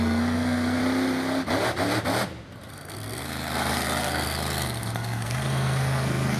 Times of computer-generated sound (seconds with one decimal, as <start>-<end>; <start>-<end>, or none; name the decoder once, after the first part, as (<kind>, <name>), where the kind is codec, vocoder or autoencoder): 0.0-0.8 (codec, SNAC); 2.7-6.4